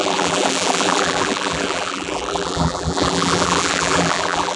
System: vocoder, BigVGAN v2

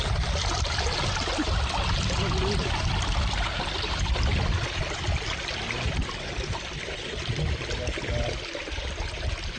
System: none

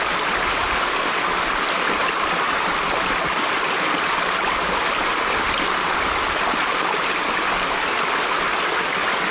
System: none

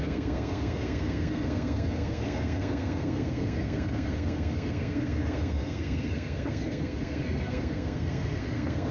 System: codec, SNAC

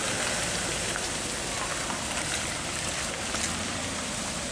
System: none